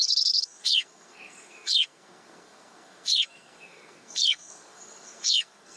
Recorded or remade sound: remade